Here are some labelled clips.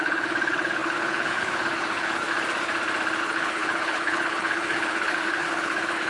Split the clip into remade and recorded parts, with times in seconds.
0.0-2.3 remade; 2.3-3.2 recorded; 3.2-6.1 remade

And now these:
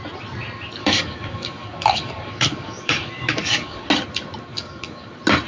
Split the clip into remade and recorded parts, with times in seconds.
0.0-0.8 recorded; 0.8-3.9 remade; 3.9-4.5 recorded; 4.5-5.1 remade; 5.1-5.5 recorded

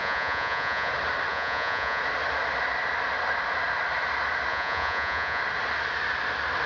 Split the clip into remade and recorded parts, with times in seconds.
0.0-0.9 remade; 0.9-1.3 recorded; 1.3-2.0 remade; 2.0-4.5 recorded; 4.5-5.4 remade; 5.4-6.7 recorded

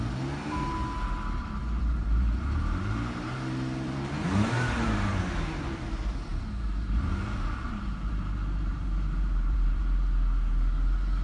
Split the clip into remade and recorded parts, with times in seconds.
0.0-1.6 recorded; 1.6-5.2 remade; 5.2-6.3 recorded; 6.3-9.8 remade; 9.8-11.2 recorded

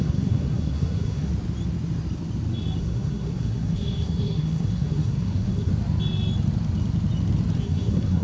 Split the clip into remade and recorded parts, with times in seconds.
0.0-1.3 remade; 1.3-2.8 recorded; 2.8-5.7 remade; 5.7-7.6 recorded; 7.6-8.2 remade

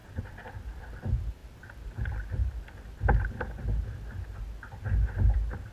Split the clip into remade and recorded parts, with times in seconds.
0.0-0.8 remade; 0.8-5.7 recorded